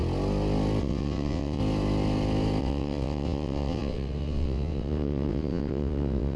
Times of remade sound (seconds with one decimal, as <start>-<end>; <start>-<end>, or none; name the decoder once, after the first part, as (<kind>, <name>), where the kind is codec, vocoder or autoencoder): 0.8-1.6 (vocoder, WaveNeXt); 2.6-6.4